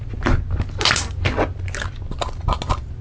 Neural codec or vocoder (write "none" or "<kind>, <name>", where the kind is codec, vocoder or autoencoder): none